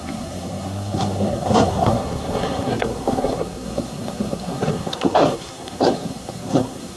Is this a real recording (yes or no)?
no